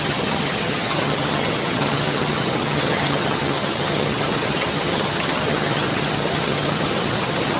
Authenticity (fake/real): fake